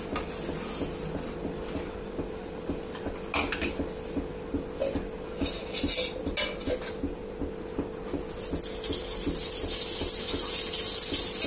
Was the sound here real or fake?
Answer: real